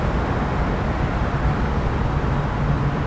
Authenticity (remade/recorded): recorded